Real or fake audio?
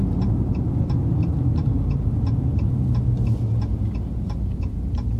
real